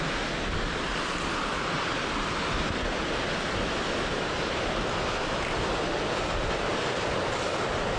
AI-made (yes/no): no